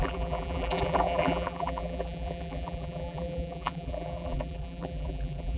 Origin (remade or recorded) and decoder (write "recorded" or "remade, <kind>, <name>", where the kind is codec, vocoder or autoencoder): remade, vocoder, BigVGAN v2